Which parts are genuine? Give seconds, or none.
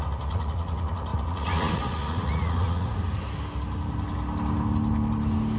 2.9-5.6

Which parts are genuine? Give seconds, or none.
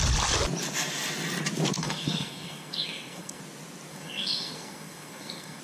0.0-1.8; 3.4-3.9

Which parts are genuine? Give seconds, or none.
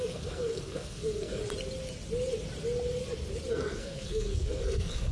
1.4-3.5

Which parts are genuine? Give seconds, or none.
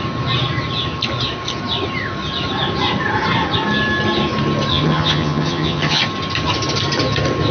0.0-4.7; 6.0-7.5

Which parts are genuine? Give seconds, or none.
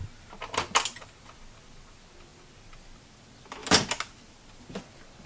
0.0-5.3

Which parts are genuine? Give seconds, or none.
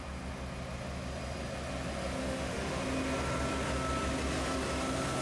0.0-2.2; 2.8-5.2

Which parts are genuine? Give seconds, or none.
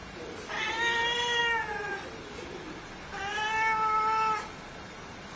0.0-5.4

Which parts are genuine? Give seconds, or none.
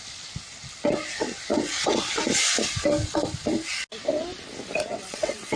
0.0-1.5; 2.1-4.9